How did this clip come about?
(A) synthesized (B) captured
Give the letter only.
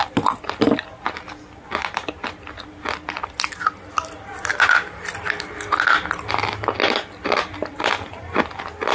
B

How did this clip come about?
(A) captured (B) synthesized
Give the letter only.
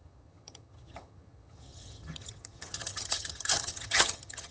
B